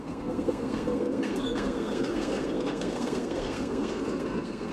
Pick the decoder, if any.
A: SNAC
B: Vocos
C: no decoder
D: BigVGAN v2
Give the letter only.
A